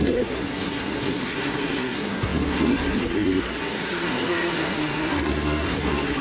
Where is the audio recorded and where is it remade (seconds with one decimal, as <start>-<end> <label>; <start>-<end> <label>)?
0.0-6.2 remade